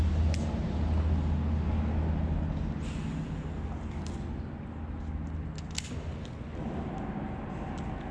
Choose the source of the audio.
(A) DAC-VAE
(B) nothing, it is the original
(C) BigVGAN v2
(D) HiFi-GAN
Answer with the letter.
B